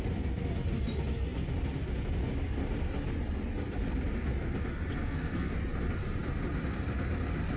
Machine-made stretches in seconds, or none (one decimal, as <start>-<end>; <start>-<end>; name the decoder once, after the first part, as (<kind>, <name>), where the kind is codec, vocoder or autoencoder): 5.0-5.5 (codec, SNAC)